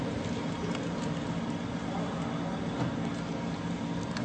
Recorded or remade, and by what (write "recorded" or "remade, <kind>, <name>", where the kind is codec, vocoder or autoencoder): recorded